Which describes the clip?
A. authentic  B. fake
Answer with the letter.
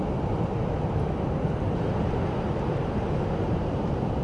A